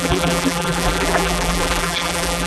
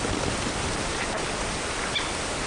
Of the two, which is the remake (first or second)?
first